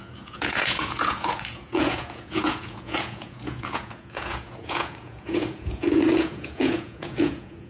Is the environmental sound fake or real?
fake